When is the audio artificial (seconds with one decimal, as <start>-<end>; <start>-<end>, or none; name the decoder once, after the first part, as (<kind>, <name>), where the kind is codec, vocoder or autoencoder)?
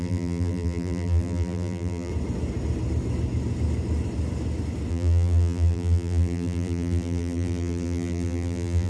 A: 0.0-2.1 (vocoder, BigVGAN v2); 4.9-8.9